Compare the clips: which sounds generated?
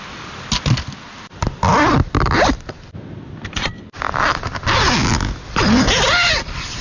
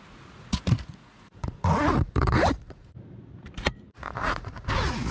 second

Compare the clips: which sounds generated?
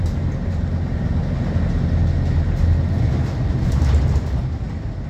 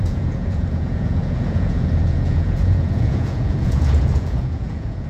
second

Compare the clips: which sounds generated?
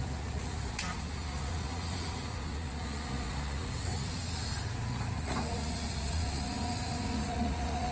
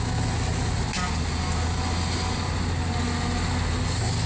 first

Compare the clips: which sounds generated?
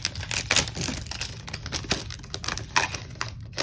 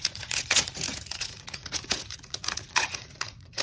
second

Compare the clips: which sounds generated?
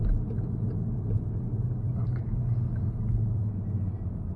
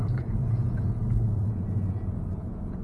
second